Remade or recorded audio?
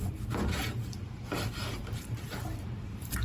remade